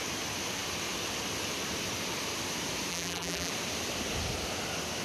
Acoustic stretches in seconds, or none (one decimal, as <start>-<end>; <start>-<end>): 0.0-2.9; 3.5-5.0